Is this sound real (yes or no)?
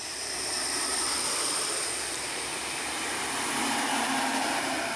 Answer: no